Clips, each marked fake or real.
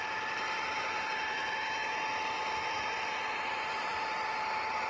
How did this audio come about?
fake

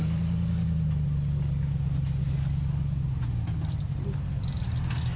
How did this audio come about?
real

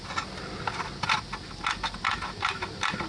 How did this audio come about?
real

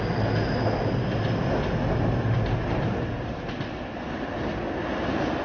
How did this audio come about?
real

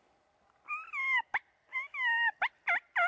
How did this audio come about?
real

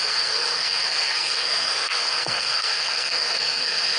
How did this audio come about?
fake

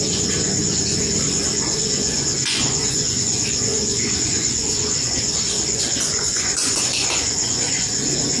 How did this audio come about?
fake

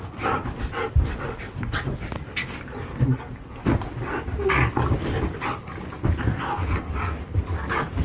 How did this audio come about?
real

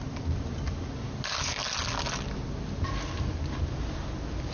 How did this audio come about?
real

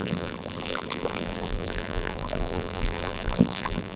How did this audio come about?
fake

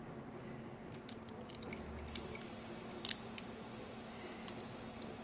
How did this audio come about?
real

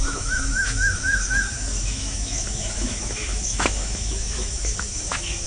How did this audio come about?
fake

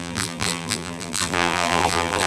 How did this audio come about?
fake